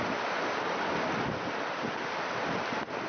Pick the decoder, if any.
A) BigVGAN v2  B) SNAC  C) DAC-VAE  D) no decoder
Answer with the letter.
D